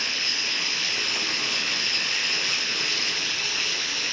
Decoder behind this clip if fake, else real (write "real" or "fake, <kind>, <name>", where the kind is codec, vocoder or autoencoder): fake, codec, HILCodec